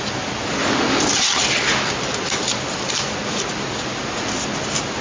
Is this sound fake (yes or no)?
no